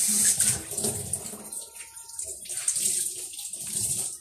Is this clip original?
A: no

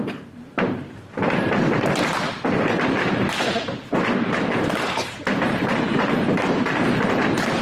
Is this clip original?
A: no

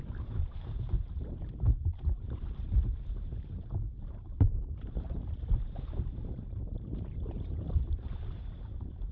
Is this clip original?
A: no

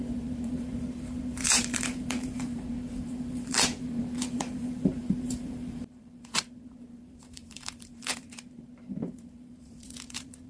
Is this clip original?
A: no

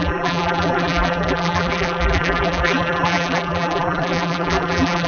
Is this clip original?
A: no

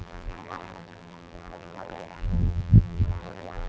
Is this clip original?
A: no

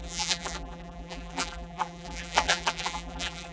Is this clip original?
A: no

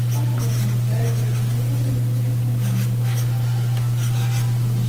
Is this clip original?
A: yes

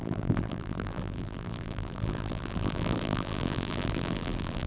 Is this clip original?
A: no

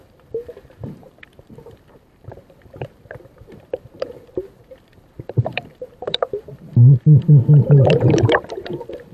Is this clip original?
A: no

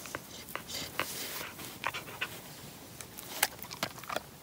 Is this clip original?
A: yes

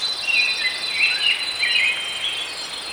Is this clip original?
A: yes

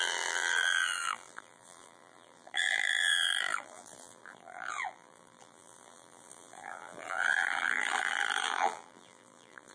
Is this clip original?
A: no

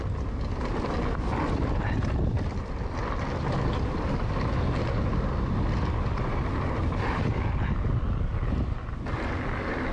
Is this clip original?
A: yes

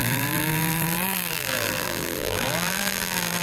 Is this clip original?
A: no